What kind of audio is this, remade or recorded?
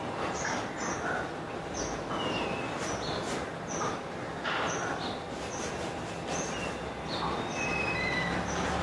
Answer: recorded